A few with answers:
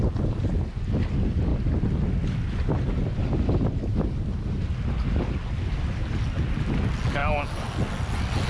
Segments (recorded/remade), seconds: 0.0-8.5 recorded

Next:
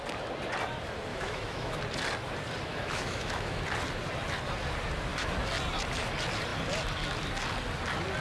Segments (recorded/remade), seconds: 0.0-1.1 recorded; 1.1-1.8 remade; 1.8-2.7 recorded; 2.7-3.6 remade; 3.6-8.2 recorded

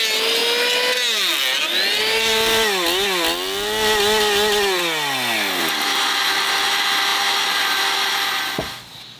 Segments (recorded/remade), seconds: 0.0-9.2 recorded

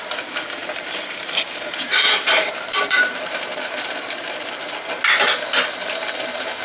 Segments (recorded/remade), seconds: 0.0-0.6 recorded; 0.6-4.4 remade; 4.4-6.6 recorded

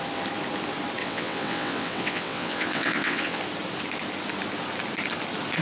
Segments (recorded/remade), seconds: 0.0-1.0 recorded; 1.0-3.4 remade; 3.4-5.6 recorded

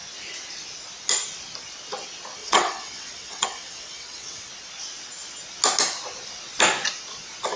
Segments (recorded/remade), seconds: 0.0-2.4 recorded; 2.4-4.5 remade; 4.5-7.6 recorded